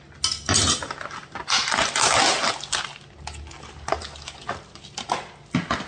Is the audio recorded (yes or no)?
yes